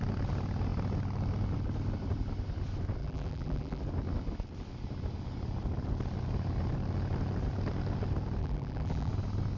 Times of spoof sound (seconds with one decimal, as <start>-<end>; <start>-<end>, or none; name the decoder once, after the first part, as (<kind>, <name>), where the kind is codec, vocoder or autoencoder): 3.0-3.8 (vocoder, BigVGAN v2); 8.4-9.1